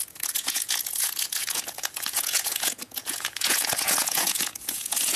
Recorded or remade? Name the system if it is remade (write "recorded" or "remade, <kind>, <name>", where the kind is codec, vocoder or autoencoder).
remade, vocoder, Vocos